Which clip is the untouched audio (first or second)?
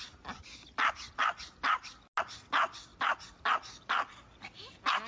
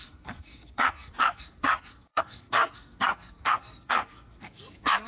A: first